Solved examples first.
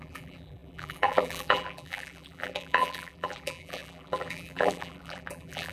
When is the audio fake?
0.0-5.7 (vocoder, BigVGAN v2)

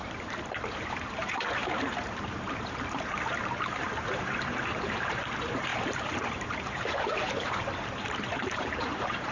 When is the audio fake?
0.0-9.3 (vocoder, BigVGAN v2)

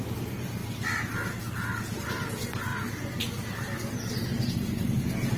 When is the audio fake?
0.0-0.6 (vocoder, BigVGAN v2); 2.0-2.7; 4.2-5.4

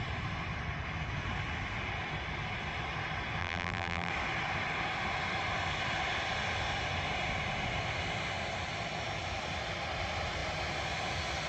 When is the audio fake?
3.4-4.1 (vocoder, BigVGAN v2)

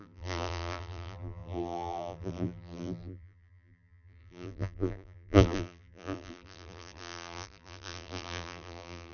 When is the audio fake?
0.0-9.1 (vocoder, BigVGAN v2)